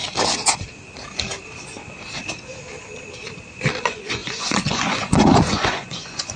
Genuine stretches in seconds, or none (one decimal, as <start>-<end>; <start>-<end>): 0.0-3.8

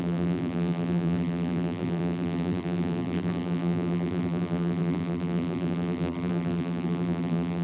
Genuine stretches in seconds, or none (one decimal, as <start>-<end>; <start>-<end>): none

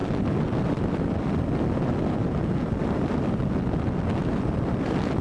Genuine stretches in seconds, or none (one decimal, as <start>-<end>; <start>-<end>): 0.0-5.2

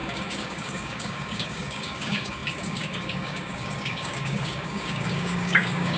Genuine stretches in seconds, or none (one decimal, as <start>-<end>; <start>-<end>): none

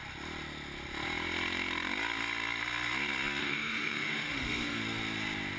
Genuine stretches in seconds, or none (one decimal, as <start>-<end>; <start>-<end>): 0.0-3.4; 4.8-5.6

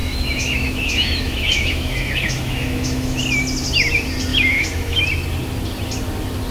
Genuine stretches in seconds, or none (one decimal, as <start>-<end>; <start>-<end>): 3.2-4.3; 5.0-6.5